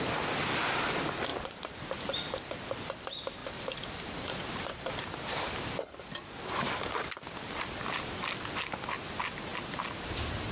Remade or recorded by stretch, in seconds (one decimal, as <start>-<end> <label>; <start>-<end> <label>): 0.0-1.3 recorded; 1.3-2.1 remade; 2.1-3.4 recorded; 3.4-7.7 remade; 7.7-9.5 recorded; 9.5-10.5 remade